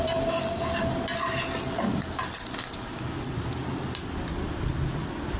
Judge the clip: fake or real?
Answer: real